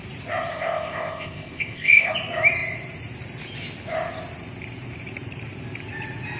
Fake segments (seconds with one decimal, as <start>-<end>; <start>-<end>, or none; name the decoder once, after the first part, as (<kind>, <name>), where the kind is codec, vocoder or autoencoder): 0.5-2.1 (codec, ZipCodec)